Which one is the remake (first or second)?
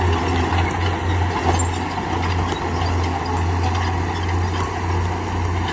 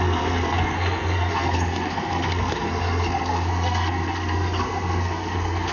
second